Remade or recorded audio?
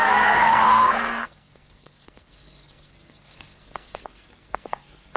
remade